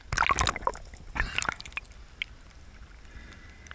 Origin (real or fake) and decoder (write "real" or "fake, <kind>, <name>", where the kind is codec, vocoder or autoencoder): real